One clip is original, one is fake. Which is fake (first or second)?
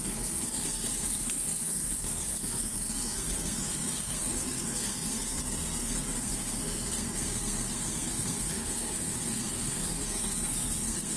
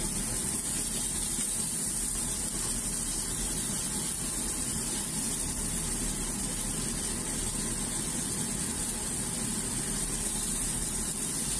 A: first